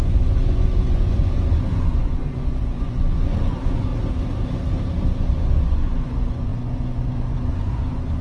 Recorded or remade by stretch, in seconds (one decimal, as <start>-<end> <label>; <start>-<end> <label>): 0.0-3.9 remade; 3.9-5.0 recorded; 5.0-8.2 remade